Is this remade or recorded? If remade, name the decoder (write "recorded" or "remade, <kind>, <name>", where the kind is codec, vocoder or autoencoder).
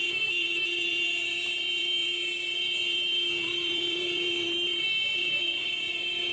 remade, vocoder, BigVGAN v2